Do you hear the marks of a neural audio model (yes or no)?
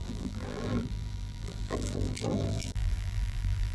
yes